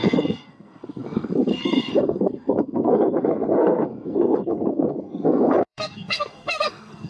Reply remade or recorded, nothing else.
remade